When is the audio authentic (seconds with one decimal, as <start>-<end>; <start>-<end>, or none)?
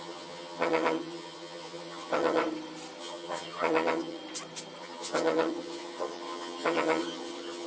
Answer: 2.4-3.0; 4.2-4.8